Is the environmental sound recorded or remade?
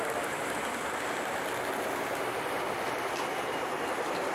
recorded